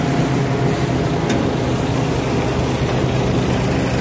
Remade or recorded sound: recorded